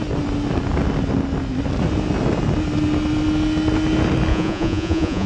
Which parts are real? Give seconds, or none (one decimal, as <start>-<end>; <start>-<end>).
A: 0.0-4.3